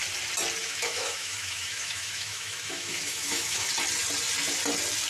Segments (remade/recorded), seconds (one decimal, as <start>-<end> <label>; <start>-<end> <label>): 0.0-0.6 recorded; 0.6-3.7 remade; 3.7-5.1 recorded